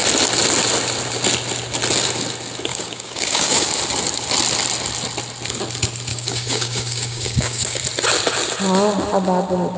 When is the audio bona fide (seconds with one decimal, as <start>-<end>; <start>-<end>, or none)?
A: 0.0-2.7; 3.7-6.1; 7.8-9.8